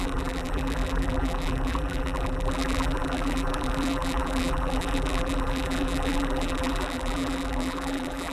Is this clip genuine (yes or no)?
no